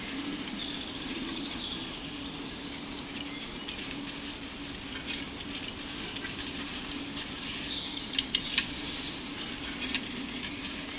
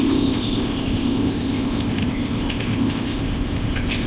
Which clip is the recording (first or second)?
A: first